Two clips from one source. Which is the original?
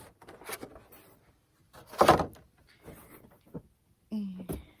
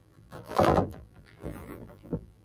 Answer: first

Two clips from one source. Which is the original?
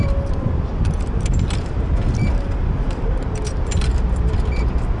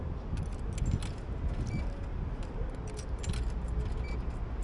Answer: second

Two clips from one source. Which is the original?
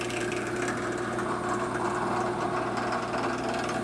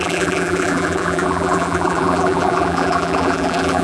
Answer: first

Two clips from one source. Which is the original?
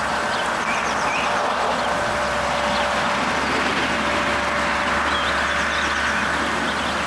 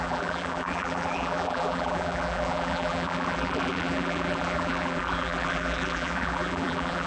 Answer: first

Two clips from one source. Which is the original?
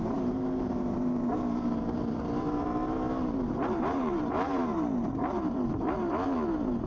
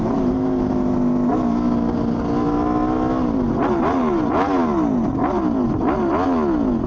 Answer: second